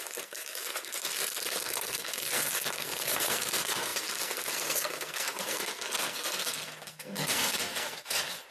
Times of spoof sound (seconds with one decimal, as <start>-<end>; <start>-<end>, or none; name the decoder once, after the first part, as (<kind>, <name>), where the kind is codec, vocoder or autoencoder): 0.0-8.5 (codec, SNAC)